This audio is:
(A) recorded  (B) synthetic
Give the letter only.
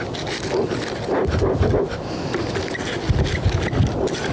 A